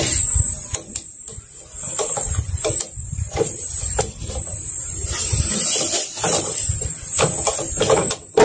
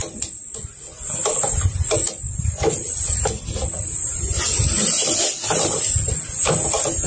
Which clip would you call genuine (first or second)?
second